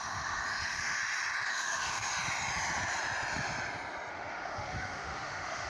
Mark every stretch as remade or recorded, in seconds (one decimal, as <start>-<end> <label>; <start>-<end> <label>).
0.0-1.0 remade; 1.0-1.5 recorded; 1.5-2.1 remade; 2.1-4.1 recorded; 4.1-5.7 remade